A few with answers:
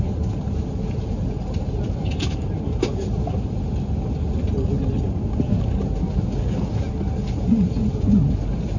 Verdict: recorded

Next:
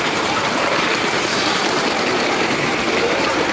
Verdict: remade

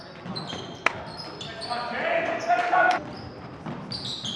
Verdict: recorded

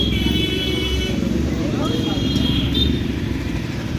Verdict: remade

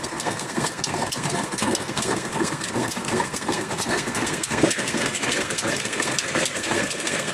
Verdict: remade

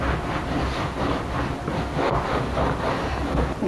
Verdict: recorded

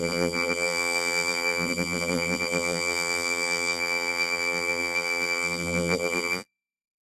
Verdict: remade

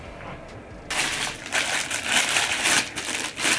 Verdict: recorded